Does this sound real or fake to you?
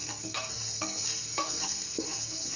fake